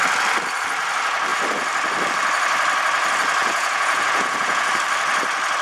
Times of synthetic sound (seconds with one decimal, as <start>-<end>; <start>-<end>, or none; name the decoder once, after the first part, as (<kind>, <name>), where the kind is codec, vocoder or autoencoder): 3.4-4.7 (vocoder, Vocos)